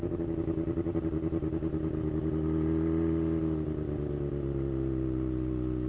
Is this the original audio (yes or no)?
yes